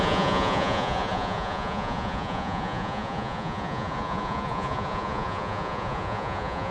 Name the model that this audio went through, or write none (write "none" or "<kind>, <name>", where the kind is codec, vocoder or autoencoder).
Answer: vocoder, Vocos